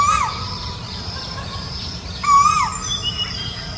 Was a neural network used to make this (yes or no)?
yes